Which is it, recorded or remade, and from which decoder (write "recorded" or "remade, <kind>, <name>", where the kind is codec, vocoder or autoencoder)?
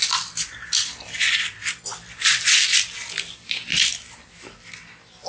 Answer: recorded